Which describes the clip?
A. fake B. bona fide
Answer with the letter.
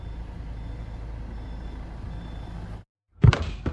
B